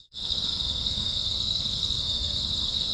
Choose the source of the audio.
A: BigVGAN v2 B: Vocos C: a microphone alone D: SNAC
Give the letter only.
D